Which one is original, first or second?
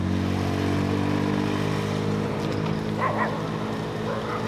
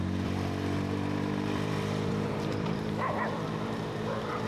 first